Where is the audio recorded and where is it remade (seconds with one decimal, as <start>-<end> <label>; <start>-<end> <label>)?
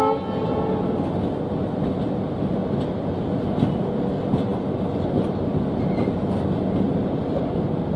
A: 0.0-8.0 recorded